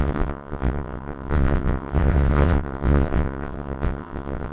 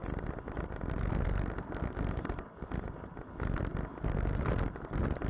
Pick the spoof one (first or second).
first